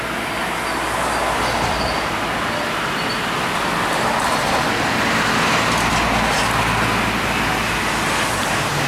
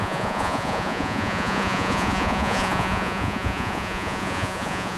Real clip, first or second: first